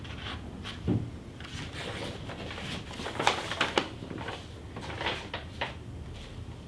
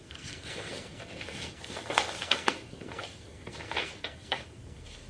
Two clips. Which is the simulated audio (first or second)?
second